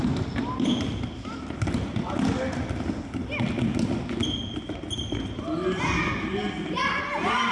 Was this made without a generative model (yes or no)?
yes